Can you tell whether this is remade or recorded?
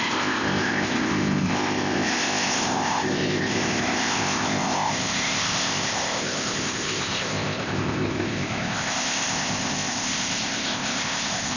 remade